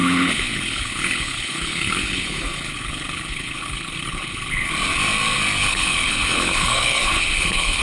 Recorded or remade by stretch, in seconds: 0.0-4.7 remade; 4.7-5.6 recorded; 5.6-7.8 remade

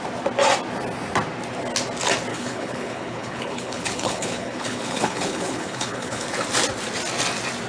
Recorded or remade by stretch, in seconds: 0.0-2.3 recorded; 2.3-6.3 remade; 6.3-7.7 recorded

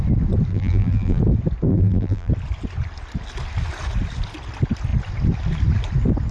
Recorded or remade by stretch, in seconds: 0.0-0.5 recorded; 0.5-1.2 remade; 1.2-1.7 recorded; 1.7-2.3 remade; 2.3-6.3 recorded

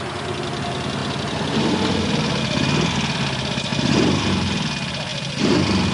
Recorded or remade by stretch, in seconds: 0.0-5.9 recorded

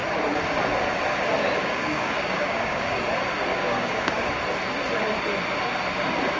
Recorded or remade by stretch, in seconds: 0.0-1.6 recorded; 1.6-2.9 remade; 2.9-3.5 recorded; 3.5-4.3 remade; 4.3-6.4 recorded

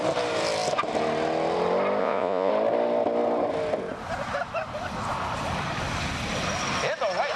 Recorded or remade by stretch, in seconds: 0.0-2.0 recorded; 2.0-2.5 remade; 2.5-7.4 recorded